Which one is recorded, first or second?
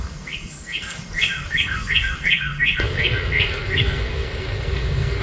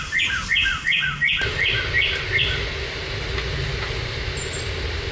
second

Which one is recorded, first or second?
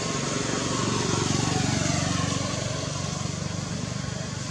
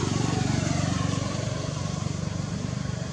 first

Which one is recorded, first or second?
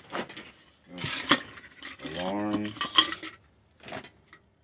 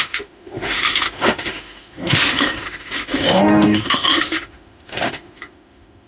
first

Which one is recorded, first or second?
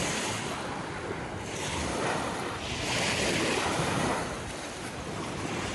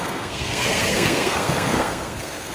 first